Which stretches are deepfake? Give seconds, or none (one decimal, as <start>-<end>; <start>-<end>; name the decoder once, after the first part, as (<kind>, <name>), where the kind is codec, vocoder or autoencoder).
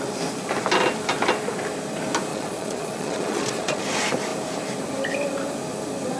2.3-3.8 (vocoder, Vocos)